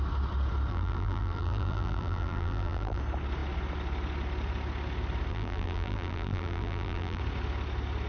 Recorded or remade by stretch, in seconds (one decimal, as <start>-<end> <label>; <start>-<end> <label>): 0.0-0.7 recorded; 0.7-3.0 remade; 3.0-5.3 recorded; 5.3-7.2 remade; 7.2-8.1 recorded